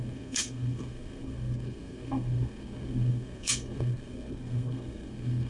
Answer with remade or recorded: remade